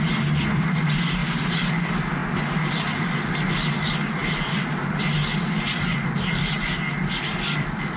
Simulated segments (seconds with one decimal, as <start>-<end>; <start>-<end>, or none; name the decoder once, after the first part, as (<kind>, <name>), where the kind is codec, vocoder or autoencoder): 1.2-1.7 (vocoder, BigVGAN v2); 4.2-4.7